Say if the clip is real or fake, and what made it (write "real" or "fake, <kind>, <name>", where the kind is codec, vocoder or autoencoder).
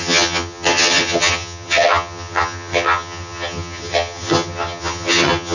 fake, vocoder, HiFi-GAN